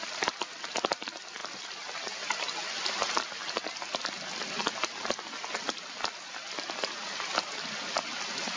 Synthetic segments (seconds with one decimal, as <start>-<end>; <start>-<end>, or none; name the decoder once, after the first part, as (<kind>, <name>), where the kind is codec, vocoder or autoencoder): none